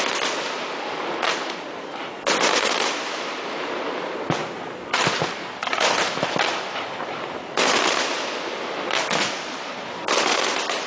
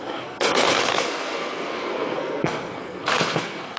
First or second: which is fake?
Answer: second